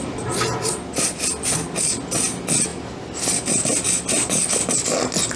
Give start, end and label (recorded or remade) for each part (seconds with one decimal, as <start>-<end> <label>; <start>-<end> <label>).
0.0-5.4 recorded